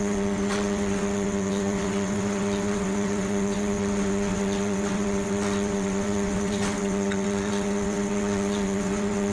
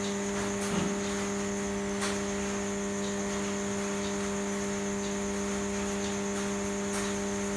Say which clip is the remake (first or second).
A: first